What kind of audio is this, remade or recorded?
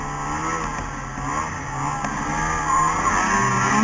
recorded